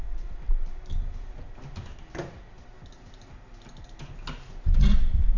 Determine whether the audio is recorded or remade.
recorded